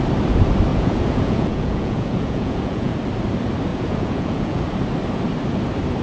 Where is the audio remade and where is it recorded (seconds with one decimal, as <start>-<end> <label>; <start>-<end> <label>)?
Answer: 0.0-0.7 recorded; 0.7-3.0 remade; 3.0-3.7 recorded; 3.7-4.6 remade; 4.6-6.0 recorded